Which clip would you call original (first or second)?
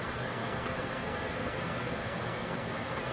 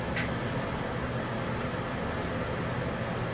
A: second